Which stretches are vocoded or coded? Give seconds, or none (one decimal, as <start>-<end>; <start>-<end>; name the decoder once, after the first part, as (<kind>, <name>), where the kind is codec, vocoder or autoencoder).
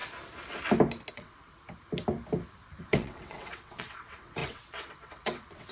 1.1-1.5 (vocoder, WaveNeXt); 2.8-5.7